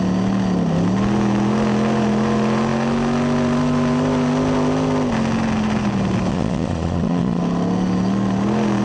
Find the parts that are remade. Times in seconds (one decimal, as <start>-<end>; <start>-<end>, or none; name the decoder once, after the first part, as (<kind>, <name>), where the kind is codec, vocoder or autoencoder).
6.3-7.4 (vocoder, Vocos)